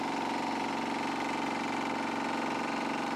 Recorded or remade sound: recorded